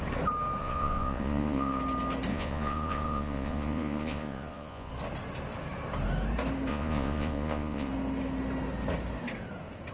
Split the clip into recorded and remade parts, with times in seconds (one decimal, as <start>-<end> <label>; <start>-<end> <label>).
0.0-0.6 recorded; 0.6-1.8 remade; 1.8-2.3 recorded; 2.3-4.9 remade; 4.9-6.7 recorded; 6.7-7.9 remade; 7.9-9.9 recorded